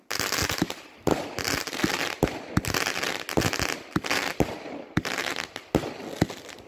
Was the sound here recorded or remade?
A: recorded